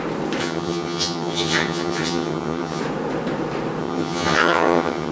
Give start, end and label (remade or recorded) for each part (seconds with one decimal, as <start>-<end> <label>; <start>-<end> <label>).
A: 0.0-0.4 recorded; 0.4-2.8 remade; 2.8-3.8 recorded; 3.8-5.1 remade